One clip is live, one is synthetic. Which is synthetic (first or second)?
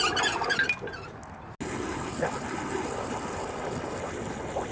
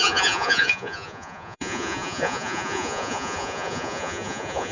second